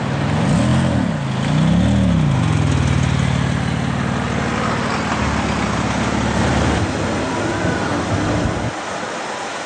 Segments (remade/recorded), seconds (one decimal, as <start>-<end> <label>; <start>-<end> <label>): 0.0-9.7 recorded